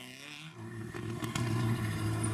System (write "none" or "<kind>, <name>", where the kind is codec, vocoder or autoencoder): none